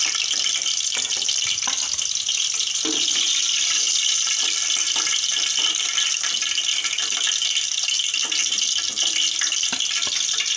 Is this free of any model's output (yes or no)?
yes